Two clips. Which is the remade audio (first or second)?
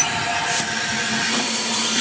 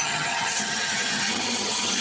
second